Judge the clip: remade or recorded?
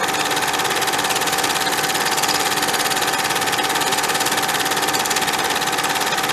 recorded